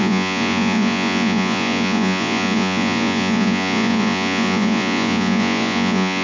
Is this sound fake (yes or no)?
yes